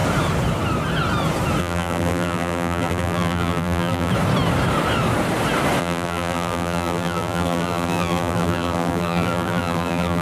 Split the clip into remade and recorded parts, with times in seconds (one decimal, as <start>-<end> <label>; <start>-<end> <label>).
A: 0.0-1.6 recorded; 1.6-4.1 remade; 4.1-5.8 recorded; 5.8-10.2 remade